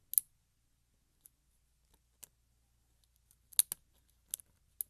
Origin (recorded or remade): recorded